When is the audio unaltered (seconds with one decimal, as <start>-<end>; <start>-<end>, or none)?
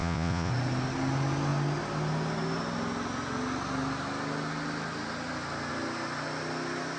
0.5-7.0